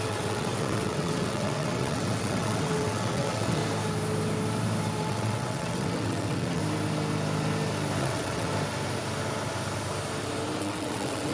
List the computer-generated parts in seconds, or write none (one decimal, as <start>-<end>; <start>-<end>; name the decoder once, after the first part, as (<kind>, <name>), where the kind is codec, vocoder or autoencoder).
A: 0.0-3.6 (vocoder, WaveNeXt); 5.0-6.6; 8.0-8.5; 10.6-11.3